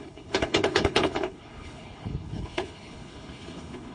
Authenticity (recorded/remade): remade